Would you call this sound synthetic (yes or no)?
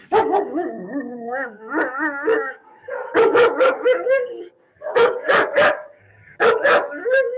yes